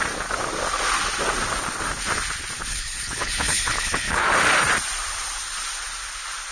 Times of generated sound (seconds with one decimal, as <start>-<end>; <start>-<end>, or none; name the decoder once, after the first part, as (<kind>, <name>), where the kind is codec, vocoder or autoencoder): 2.7-4.3 (codec, HILCodec)

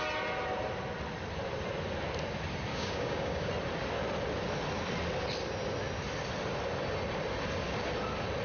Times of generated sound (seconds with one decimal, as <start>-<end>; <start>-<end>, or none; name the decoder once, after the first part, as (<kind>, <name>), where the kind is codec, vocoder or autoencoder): 2.7-3.5 (codec, DAC)